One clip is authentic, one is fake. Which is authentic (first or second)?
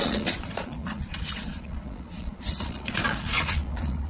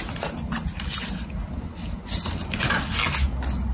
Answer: second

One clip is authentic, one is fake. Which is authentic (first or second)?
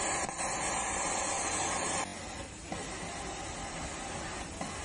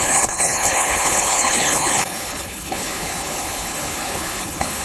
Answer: first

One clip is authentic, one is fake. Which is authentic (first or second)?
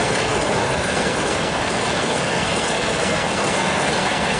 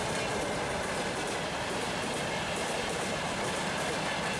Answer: second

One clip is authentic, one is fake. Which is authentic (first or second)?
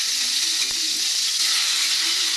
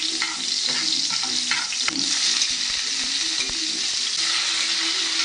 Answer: second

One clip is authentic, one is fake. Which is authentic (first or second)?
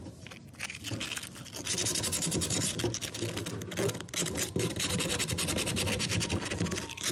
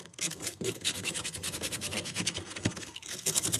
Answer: first